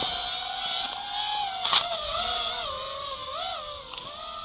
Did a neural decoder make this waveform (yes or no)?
no